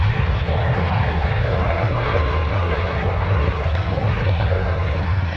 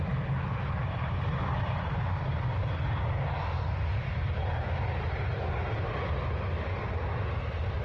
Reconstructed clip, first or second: first